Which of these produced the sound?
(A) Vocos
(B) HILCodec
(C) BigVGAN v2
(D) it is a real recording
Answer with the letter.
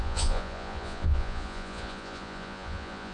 A